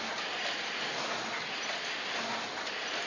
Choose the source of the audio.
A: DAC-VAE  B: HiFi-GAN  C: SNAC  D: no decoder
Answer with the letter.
D